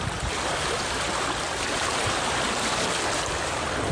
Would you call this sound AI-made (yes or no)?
no